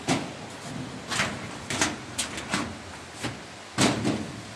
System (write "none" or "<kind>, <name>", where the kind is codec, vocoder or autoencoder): none